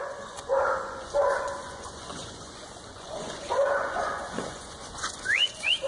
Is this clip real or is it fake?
fake